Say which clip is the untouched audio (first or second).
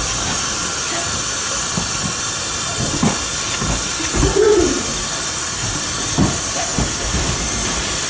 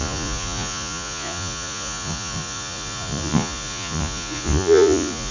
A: first